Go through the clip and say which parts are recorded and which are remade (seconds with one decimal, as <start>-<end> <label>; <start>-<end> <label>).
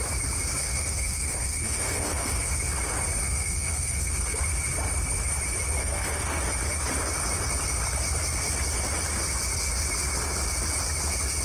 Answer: 0.0-0.6 recorded; 0.6-2.5 remade; 2.5-3.2 recorded; 3.2-4.4 remade; 4.4-5.8 recorded; 5.8-6.4 remade; 6.4-11.4 recorded